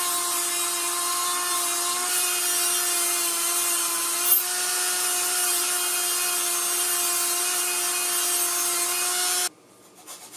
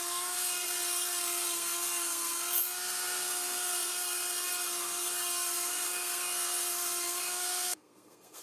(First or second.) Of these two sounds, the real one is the first